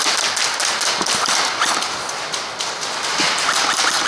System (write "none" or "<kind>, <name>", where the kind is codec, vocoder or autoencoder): none